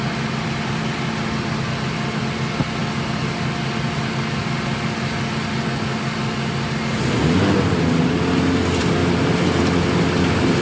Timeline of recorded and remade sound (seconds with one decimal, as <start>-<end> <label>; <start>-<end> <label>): 0.0-10.6 recorded